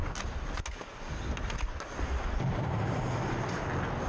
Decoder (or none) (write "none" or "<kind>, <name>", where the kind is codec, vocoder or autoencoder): none